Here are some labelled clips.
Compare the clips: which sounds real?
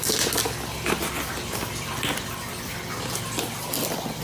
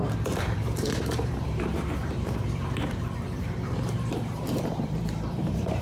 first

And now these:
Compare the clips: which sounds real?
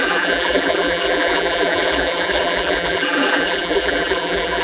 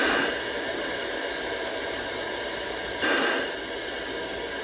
second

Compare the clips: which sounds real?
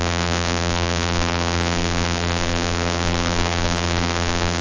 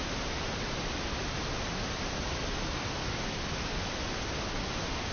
second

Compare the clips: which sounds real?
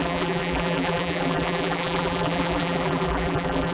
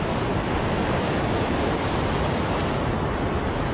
second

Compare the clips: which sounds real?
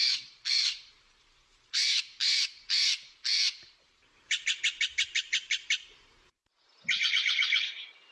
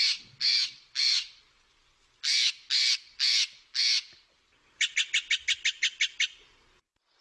second